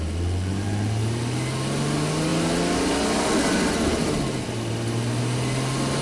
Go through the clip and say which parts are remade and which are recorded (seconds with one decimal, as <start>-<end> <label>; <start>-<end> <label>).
0.0-6.0 recorded